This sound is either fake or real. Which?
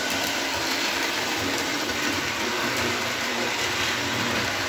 fake